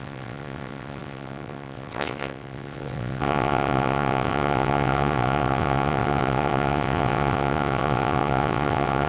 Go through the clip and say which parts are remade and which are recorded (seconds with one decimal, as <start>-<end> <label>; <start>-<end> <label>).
0.0-9.1 remade